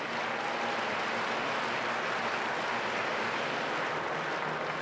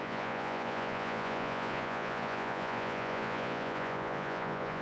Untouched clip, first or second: first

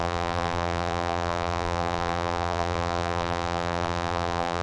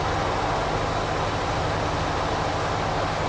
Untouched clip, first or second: second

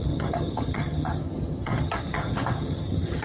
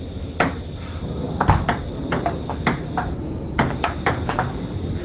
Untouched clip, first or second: second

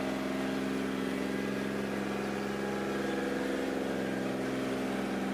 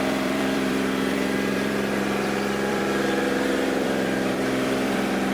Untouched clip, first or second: first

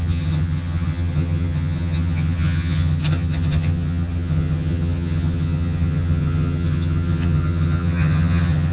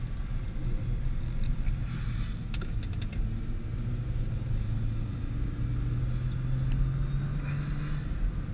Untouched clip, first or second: second